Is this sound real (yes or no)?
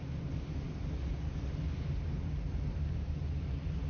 yes